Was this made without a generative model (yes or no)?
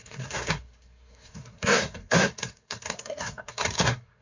no